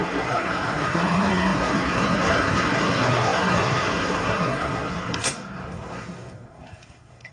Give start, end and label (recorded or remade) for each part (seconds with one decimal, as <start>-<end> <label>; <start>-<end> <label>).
0.0-7.3 remade